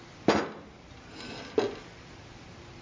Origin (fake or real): real